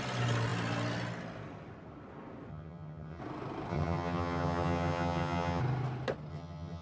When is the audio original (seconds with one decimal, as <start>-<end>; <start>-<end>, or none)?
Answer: 0.0-2.5; 3.2-3.7; 5.6-6.3